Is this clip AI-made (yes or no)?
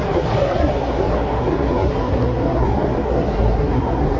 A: yes